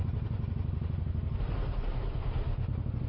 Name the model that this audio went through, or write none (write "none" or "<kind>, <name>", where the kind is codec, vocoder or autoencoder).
none